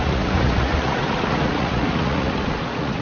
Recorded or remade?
remade